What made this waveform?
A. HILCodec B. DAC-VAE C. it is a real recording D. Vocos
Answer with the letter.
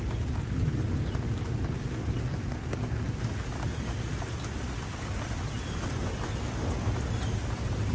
C